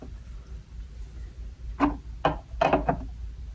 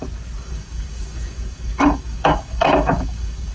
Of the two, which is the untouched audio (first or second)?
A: first